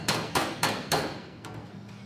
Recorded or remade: remade